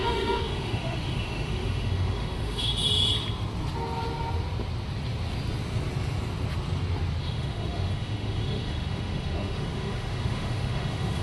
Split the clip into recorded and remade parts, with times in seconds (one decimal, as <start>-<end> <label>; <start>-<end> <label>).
0.0-2.7 remade; 2.7-7.2 recorded; 7.2-11.2 remade